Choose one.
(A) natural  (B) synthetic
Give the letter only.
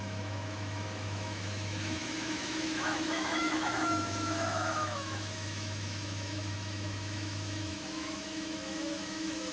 B